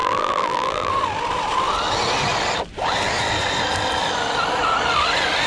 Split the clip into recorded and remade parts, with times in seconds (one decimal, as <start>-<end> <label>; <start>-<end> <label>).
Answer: 0.0-0.9 remade; 0.9-5.5 recorded